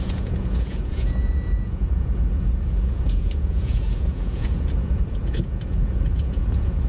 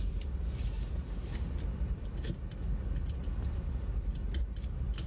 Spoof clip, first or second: first